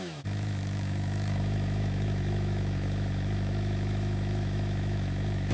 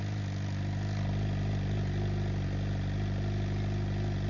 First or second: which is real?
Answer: second